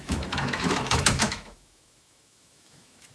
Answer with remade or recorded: remade